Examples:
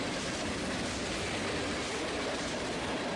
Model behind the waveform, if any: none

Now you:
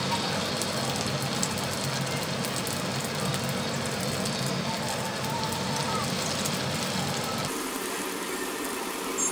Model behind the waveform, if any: none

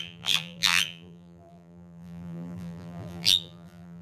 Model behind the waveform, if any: vocoder, BigVGAN v2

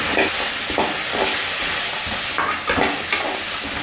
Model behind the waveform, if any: none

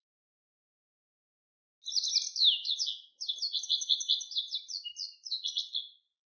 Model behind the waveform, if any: none